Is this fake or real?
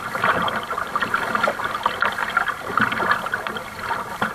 real